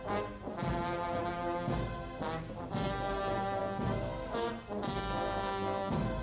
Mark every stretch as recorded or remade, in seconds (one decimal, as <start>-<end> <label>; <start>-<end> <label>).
0.0-3.6 recorded; 3.6-4.5 remade; 4.5-6.2 recorded